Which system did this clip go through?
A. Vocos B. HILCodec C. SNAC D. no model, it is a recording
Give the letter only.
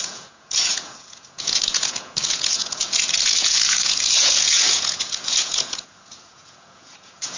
A